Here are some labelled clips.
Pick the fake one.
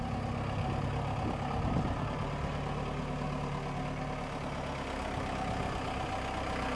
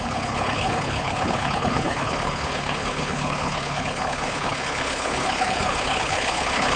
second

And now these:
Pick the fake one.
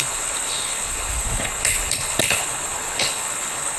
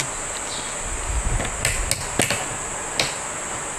first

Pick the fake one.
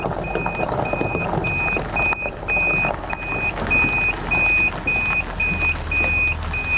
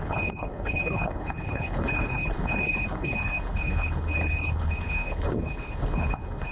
second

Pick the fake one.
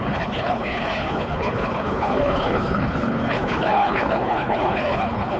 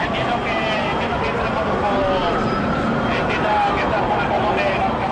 first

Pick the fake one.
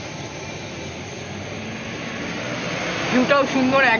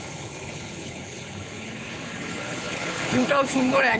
second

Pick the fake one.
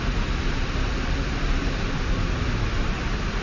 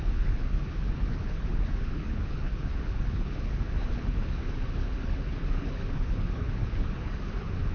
second